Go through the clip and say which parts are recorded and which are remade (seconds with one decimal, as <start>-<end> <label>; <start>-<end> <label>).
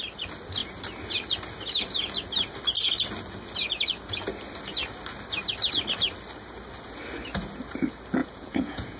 0.0-8.2 recorded; 8.2-9.0 remade